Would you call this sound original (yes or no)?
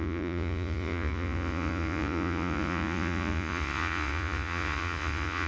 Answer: no